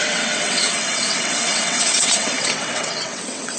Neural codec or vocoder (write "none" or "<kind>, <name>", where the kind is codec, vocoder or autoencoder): vocoder, WaveNeXt